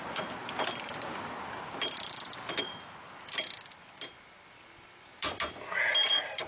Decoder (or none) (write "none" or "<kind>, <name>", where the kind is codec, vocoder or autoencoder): none